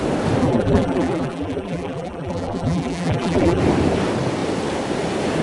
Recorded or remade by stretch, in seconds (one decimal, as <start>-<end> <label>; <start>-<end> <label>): 0.0-0.4 recorded; 0.4-3.6 remade; 3.6-5.4 recorded